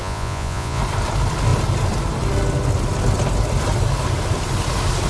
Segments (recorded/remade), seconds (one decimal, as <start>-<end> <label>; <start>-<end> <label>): 0.0-0.8 remade; 0.8-5.1 recorded